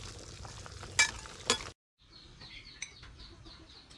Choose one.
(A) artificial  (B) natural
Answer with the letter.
B